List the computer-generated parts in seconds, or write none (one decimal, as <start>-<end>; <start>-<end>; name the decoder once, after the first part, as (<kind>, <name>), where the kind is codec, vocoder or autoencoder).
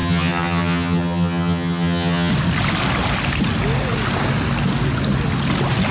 0.0-2.3 (vocoder, HiFi-GAN)